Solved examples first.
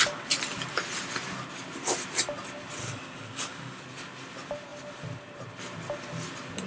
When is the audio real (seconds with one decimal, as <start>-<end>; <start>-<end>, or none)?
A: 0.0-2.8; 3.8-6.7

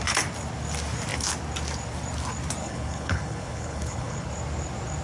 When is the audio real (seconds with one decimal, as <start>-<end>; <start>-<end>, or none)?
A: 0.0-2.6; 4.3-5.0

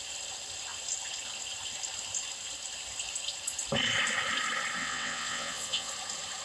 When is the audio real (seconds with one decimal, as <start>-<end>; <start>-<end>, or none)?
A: 0.0-4.8; 5.9-6.4